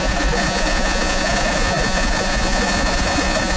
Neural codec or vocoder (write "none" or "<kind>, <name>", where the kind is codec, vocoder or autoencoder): vocoder, Vocos